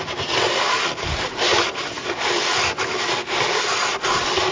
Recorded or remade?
recorded